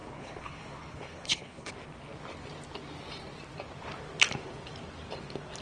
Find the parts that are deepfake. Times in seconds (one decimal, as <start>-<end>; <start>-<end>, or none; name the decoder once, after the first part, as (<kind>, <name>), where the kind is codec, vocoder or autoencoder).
0.0-1.7 (codec, HILCodec)